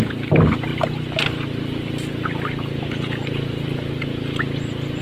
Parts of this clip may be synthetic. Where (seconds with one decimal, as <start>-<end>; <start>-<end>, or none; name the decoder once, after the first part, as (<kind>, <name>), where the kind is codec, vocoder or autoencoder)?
none